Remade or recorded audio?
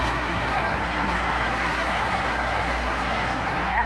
remade